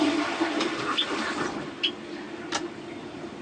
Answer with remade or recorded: remade